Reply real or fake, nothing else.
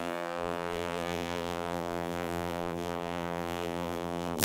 fake